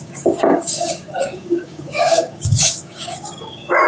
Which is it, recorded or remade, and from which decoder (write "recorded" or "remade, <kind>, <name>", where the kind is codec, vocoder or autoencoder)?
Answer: remade, codec, DAC